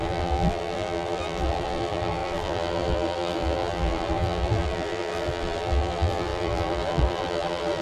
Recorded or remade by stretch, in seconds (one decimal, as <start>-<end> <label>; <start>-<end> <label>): 0.0-7.8 remade